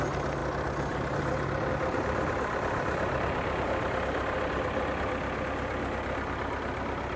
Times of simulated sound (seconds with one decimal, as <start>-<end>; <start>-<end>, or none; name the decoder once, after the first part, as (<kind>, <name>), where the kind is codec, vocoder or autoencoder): none